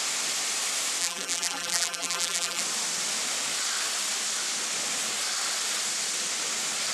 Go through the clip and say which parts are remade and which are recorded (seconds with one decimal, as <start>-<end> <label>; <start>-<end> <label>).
0.0-1.0 recorded; 1.0-2.6 remade; 2.6-6.9 recorded

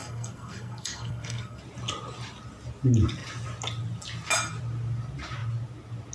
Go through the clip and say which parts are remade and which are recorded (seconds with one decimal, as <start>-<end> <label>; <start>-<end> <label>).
0.0-1.6 remade; 1.6-6.1 recorded